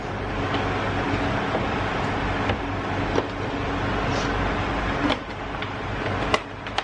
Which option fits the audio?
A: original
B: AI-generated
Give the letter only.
A